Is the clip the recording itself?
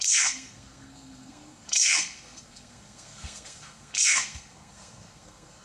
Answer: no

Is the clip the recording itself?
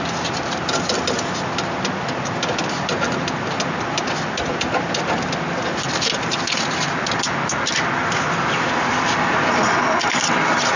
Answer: yes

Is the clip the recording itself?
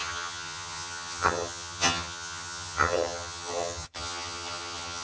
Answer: no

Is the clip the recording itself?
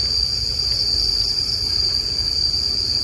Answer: yes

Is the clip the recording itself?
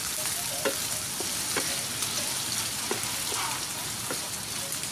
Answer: yes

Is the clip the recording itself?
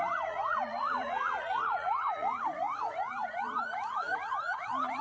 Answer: no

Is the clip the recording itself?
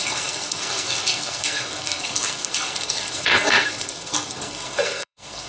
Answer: no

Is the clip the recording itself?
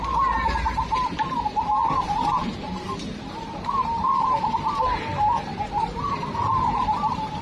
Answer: no